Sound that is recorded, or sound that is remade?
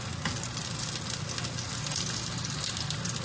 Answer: recorded